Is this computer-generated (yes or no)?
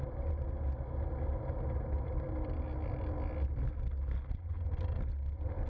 no